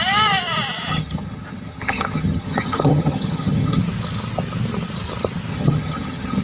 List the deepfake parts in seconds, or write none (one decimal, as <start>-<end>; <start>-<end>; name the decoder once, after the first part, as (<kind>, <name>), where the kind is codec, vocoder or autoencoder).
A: 0.9-3.8 (vocoder, HiFi-GAN); 5.5-6.4